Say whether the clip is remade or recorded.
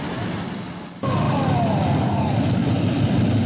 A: recorded